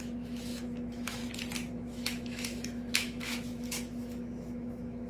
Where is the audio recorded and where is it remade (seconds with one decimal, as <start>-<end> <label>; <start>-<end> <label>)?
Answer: 0.0-1.2 remade; 1.2-1.7 recorded; 1.7-5.1 remade